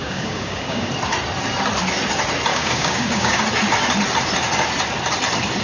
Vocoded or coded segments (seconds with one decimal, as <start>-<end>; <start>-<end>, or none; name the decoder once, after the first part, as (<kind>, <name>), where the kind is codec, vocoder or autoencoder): 0.0-0.9 (codec, DAC); 2.5-3.4